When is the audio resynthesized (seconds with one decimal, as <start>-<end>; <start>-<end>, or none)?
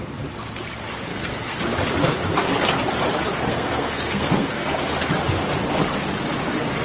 1.1-1.6; 3.5-4.7